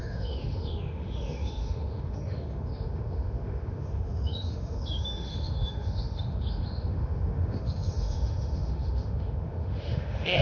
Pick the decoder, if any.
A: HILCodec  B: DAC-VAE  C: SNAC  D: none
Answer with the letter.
B